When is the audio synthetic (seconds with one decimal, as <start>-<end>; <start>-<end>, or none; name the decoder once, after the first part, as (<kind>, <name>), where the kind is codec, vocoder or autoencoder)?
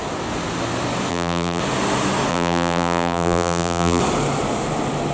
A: 1.1-1.6 (vocoder, BigVGAN v2); 2.3-4.0